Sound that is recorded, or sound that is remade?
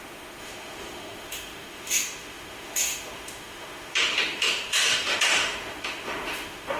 remade